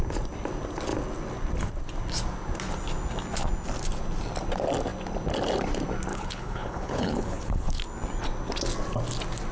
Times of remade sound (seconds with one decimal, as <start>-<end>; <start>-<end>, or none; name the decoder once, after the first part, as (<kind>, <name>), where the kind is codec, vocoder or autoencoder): 6.1-7.8 (codec, HILCodec)